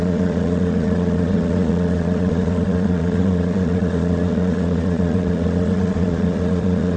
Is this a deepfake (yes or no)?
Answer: yes